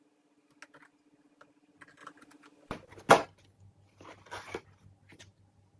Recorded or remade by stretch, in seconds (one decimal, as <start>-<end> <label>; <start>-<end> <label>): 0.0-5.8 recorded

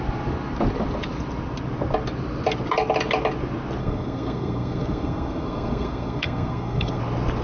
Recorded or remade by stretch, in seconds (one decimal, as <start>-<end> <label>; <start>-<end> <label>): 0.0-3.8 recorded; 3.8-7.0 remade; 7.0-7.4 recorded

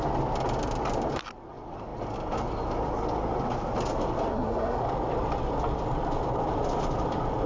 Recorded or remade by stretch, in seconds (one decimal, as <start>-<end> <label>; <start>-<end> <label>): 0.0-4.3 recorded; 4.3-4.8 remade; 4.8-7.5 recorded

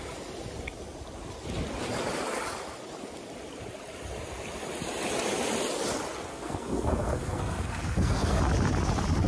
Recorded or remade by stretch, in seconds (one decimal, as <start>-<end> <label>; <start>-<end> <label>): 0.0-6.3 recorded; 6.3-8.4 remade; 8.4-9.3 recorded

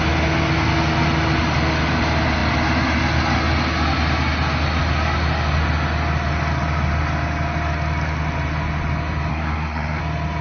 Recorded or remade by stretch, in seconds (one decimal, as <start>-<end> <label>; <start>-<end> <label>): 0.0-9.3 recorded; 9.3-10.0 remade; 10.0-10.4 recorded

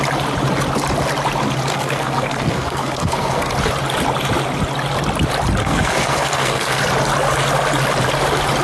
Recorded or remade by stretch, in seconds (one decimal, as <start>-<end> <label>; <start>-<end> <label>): 0.0-1.7 recorded; 1.7-3.5 remade; 3.5-5.6 recorded; 5.6-6.8 remade; 6.8-8.6 recorded